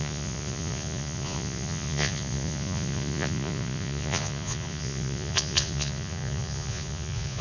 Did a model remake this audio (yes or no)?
yes